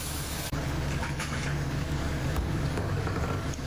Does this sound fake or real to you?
fake